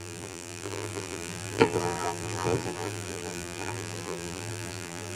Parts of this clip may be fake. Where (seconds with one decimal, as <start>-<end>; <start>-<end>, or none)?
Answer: 0.0-5.2